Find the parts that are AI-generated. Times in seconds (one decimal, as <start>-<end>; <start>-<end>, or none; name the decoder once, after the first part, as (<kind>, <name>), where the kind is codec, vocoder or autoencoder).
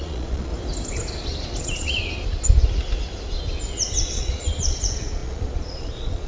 0.0-0.5 (vocoder, Vocos); 1.6-2.0; 4.0-6.3